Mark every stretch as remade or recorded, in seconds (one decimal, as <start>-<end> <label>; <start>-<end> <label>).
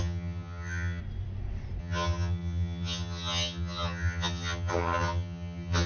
0.0-1.0 remade; 1.0-1.8 recorded; 1.8-5.9 remade